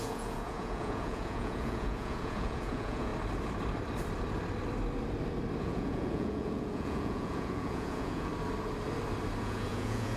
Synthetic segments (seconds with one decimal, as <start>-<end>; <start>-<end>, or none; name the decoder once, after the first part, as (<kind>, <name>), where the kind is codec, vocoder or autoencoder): 0.0-3.1 (vocoder, Vocos); 5.6-8.3; 9.4-10.2